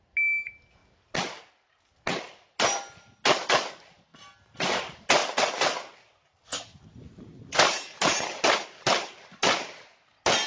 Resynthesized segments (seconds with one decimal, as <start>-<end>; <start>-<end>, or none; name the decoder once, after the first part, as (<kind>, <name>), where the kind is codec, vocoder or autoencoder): none